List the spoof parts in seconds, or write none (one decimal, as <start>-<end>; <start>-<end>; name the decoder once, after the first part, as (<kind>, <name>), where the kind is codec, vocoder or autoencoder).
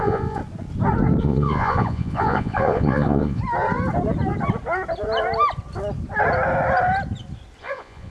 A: 0.0-0.4 (vocoder, Vocos); 1.2-3.4; 7.6-8.1